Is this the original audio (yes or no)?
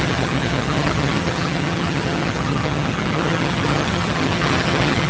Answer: no